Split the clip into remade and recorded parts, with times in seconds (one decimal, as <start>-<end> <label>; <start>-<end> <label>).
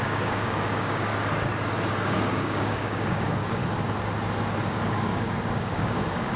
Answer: 0.0-1.1 remade; 1.1-1.9 recorded; 1.9-3.6 remade; 3.6-4.7 recorded; 4.7-6.4 remade